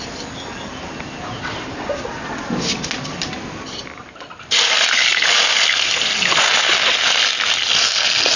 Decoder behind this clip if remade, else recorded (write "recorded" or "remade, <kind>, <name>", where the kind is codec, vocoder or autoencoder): recorded